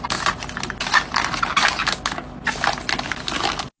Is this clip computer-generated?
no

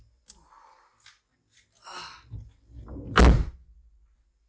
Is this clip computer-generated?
no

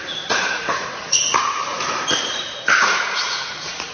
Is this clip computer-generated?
yes